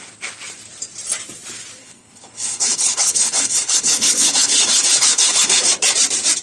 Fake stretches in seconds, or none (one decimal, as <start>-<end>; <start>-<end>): 1.8-5.6

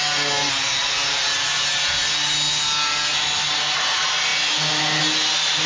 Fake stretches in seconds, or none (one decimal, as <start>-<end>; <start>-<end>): none

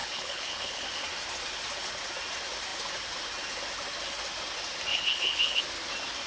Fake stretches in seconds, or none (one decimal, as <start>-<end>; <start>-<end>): 0.0-0.8; 4.9-5.6

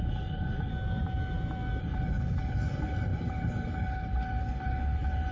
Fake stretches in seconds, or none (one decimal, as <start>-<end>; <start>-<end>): 0.0-0.7; 1.8-5.3

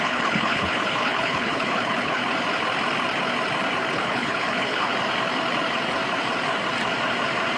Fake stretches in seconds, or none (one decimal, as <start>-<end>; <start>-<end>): 0.0-2.2; 3.9-4.9

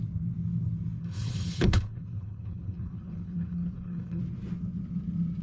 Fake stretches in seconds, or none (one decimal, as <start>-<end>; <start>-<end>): 1.0-4.2